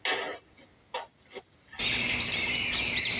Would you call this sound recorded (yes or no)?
yes